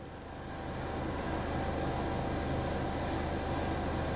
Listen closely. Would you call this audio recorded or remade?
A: recorded